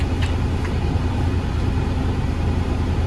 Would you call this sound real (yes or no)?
yes